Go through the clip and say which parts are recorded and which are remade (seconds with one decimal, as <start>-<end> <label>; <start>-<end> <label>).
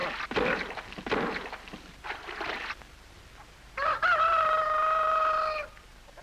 0.0-3.7 recorded; 3.7-5.2 remade; 5.2-5.8 recorded; 5.8-6.2 remade